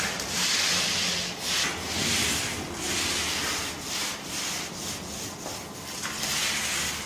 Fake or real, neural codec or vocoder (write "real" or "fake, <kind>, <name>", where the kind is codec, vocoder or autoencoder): real